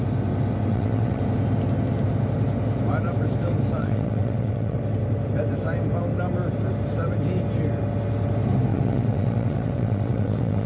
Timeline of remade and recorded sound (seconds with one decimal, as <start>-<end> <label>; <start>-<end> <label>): 0.0-0.7 recorded; 0.7-1.2 remade; 1.2-3.8 recorded; 3.8-4.8 remade; 4.8-8.7 recorded; 8.7-10.7 remade